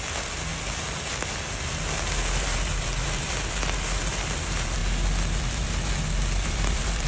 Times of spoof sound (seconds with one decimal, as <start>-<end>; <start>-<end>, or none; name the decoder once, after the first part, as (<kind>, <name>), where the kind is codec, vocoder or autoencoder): 0.0-0.5 (vocoder, BigVGAN v2); 2.3-4.8; 5.4-7.1